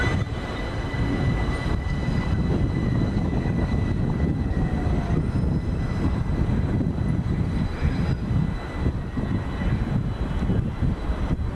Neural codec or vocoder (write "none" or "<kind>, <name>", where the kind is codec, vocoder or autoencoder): none